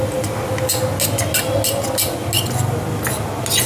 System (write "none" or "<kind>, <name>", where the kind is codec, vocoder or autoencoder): none